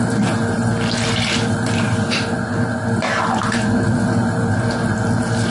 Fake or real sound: real